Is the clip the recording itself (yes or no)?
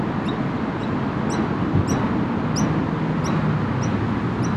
yes